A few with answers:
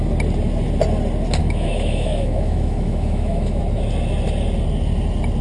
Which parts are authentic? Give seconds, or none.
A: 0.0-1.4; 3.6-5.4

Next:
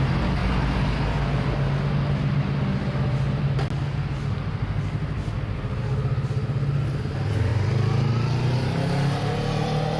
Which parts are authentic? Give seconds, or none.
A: 0.0-10.0

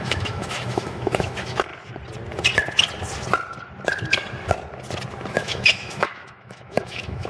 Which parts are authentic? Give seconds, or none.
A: 1.7-5.3